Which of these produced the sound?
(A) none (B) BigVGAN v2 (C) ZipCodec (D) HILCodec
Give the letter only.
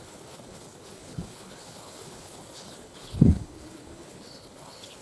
D